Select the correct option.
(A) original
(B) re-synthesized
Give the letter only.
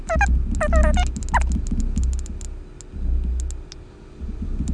A